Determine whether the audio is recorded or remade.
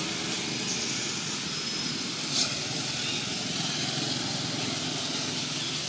recorded